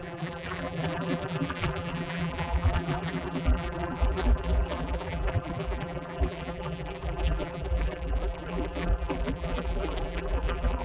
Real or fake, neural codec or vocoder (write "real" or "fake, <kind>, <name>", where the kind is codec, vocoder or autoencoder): fake, vocoder, BigVGAN v2